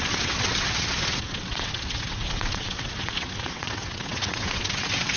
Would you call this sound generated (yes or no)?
yes